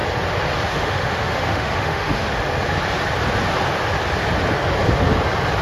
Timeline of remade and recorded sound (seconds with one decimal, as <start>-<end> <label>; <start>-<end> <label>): 0.0-0.7 recorded; 0.7-2.3 remade; 2.3-5.6 recorded